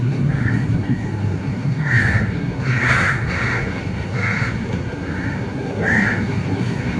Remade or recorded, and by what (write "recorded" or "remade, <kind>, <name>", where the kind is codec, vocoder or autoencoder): remade, codec, SNAC